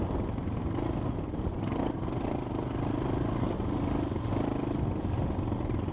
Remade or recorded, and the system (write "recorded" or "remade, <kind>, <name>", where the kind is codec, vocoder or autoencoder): recorded